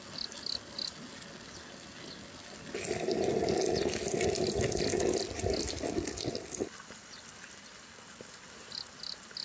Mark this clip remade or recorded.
recorded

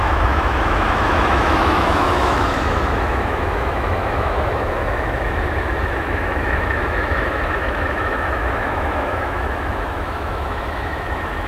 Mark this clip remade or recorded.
remade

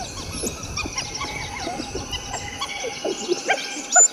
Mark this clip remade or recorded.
recorded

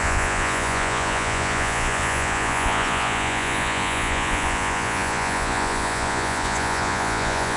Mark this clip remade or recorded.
remade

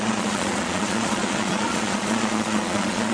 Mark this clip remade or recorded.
remade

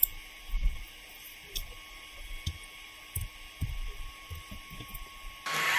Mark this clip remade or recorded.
recorded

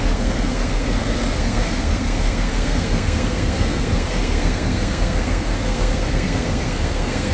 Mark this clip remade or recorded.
remade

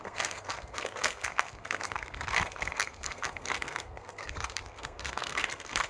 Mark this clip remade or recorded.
remade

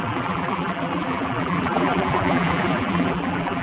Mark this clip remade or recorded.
remade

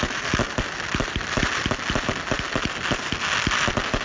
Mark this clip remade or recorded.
recorded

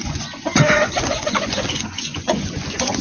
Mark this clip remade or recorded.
remade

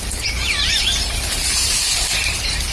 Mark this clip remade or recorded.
remade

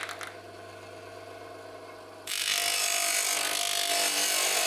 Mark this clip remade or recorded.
recorded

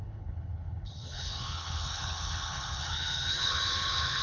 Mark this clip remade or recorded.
remade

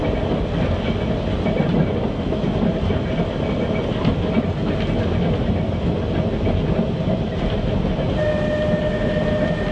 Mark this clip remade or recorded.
recorded